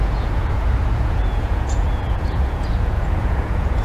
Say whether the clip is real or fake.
fake